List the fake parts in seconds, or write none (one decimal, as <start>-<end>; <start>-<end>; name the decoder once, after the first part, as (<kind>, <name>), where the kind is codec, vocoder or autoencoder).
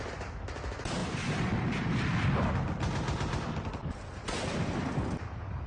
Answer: none